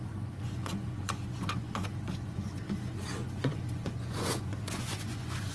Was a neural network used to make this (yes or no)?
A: yes